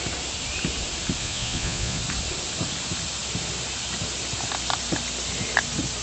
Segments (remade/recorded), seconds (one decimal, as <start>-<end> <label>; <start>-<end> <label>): 0.0-1.2 recorded; 1.2-2.0 remade; 2.0-6.0 recorded